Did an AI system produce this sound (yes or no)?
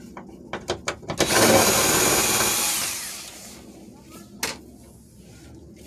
no